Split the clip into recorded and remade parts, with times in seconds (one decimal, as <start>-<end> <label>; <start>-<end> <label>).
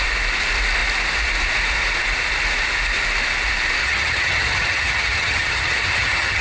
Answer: 0.0-3.8 recorded; 3.8-6.4 remade